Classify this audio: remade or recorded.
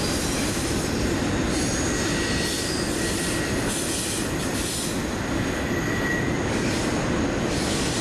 recorded